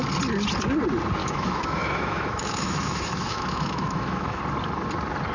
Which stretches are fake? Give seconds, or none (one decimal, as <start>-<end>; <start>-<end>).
1.2-4.4